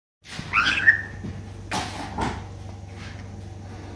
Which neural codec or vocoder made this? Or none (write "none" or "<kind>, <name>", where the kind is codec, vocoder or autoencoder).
none